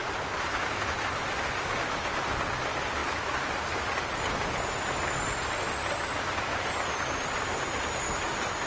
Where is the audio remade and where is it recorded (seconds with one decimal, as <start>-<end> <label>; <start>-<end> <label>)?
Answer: 0.0-8.7 recorded